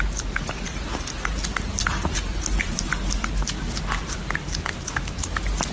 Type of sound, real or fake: real